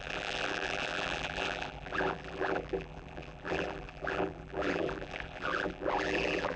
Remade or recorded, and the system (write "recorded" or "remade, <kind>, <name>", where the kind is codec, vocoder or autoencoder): remade, vocoder, BigVGAN v2